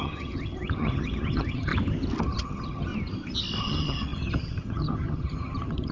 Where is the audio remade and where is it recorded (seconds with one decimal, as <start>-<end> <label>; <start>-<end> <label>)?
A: 0.0-1.7 remade; 1.7-2.2 recorded; 2.2-2.9 remade; 2.9-3.6 recorded; 3.6-5.9 remade